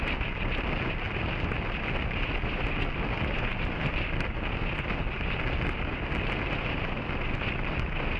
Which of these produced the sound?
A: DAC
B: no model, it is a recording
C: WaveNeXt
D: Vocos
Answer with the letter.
B